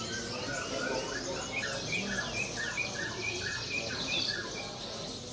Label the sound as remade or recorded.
recorded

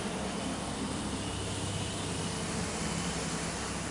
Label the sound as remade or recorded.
recorded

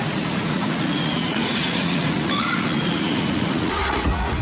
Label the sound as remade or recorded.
remade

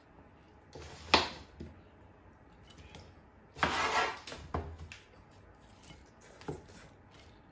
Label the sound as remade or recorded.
recorded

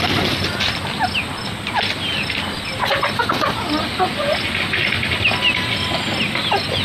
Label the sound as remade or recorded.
recorded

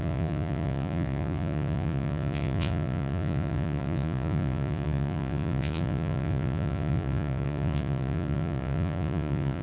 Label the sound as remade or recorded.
remade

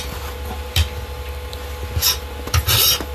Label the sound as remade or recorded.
recorded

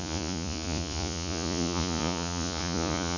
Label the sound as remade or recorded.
remade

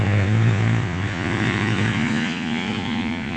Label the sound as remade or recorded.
remade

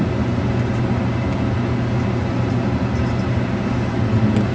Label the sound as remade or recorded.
recorded